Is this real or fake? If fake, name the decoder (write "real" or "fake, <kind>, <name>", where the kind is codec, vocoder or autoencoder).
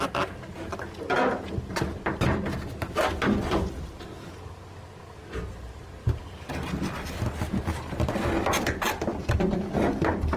real